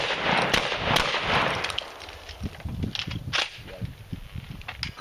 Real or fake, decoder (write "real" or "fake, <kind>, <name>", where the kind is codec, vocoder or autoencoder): real